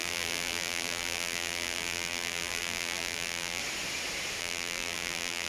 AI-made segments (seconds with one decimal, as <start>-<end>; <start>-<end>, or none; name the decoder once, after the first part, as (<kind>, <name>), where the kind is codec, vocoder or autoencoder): 0.0-3.6 (vocoder, BigVGAN v2); 4.4-5.5